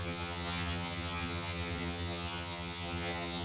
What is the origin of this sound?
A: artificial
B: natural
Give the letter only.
A